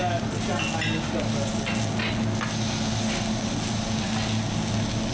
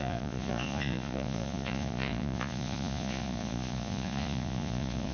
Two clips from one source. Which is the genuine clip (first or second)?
first